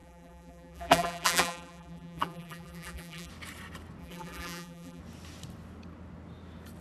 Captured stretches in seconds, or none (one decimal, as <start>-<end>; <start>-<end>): 3.3-4.0; 5.0-6.8

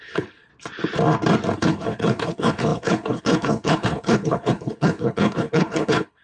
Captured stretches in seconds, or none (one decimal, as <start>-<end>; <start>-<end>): 0.5-1.5

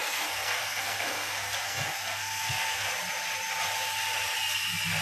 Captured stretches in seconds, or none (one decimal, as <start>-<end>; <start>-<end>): 2.9-5.0

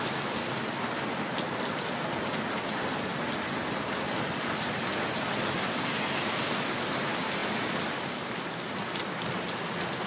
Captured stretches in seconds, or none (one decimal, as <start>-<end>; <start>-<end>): 0.0-10.1